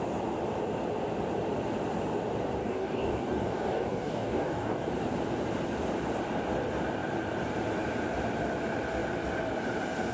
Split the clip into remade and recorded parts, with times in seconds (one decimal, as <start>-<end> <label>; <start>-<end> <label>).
0.0-2.6 recorded; 2.6-4.9 remade; 4.9-10.1 recorded